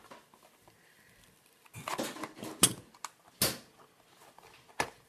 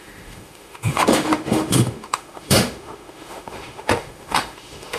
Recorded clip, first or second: first